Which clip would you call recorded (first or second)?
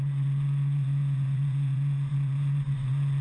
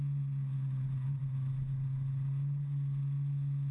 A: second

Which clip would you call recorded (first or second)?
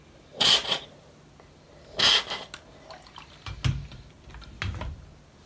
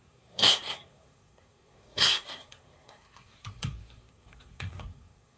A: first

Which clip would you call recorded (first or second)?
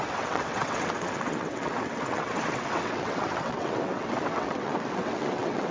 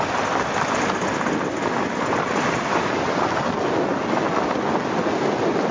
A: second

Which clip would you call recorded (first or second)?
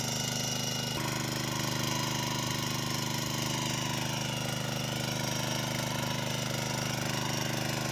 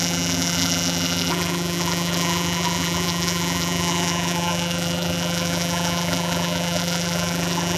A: first